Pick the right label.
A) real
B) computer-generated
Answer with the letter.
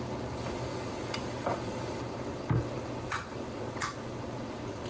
A